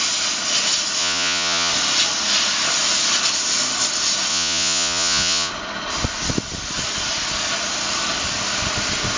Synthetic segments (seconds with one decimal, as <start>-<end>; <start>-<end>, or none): 1.0-1.7; 4.3-5.5